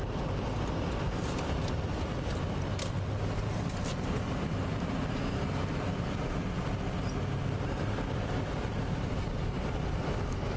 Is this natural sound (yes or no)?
yes